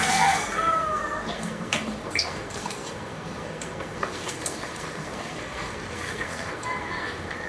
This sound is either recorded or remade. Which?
remade